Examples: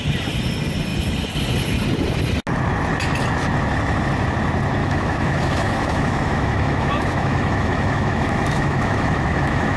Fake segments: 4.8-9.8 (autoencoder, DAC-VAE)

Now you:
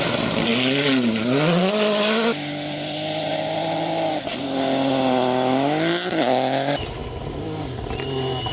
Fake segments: none

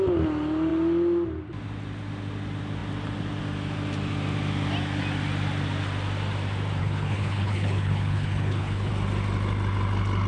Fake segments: 6.8-8.9 (codec, HILCodec)

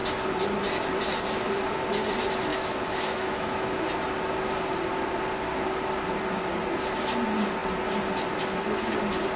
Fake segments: 2.5-3.8 (autoencoder, DAC-VAE)